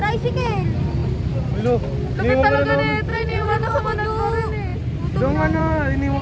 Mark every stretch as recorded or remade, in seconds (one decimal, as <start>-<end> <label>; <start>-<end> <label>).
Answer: 0.0-3.1 recorded; 3.1-3.8 remade; 3.8-6.2 recorded